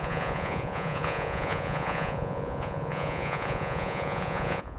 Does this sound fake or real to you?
fake